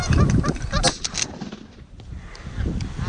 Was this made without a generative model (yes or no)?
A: yes